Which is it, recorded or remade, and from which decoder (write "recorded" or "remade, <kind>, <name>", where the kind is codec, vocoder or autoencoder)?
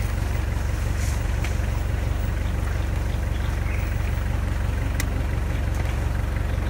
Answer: recorded